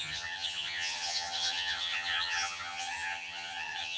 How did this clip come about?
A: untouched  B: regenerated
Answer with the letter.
B